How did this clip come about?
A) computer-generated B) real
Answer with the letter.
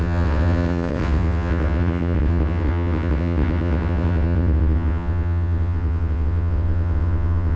A